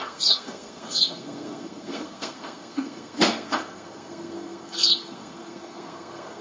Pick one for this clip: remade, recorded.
remade